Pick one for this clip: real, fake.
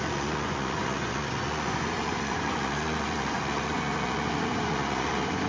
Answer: fake